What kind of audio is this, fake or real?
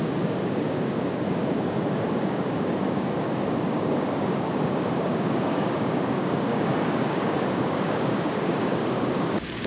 fake